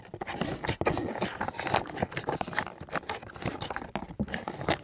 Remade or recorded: recorded